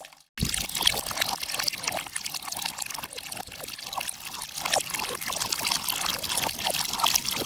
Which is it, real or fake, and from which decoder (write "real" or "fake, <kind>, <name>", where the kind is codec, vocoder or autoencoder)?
real